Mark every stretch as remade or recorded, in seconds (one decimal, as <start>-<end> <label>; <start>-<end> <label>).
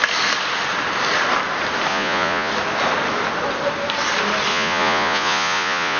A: 0.0-1.9 recorded; 1.9-2.5 remade; 2.5-4.5 recorded; 4.5-6.0 remade